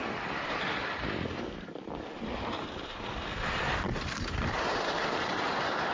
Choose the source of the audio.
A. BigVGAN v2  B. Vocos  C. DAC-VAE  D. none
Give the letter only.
A